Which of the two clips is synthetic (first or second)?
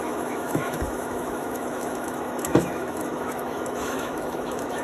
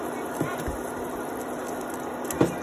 first